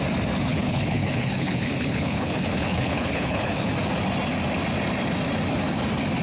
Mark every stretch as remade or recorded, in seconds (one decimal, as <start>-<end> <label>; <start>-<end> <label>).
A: 0.0-0.5 recorded; 0.5-3.7 remade; 3.7-6.2 recorded